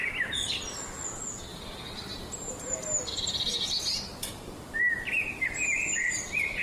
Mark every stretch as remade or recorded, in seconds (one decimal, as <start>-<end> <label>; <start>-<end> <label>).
0.0-1.5 recorded; 1.5-2.7 remade; 2.7-3.5 recorded; 3.5-6.6 remade